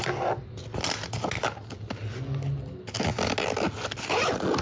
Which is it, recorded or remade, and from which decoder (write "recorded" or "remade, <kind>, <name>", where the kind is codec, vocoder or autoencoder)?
recorded